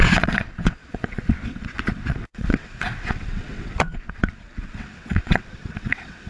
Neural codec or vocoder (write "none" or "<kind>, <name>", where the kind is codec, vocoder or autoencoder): vocoder, WaveNeXt